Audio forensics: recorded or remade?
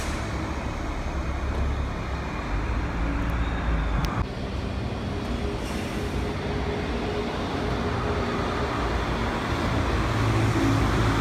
recorded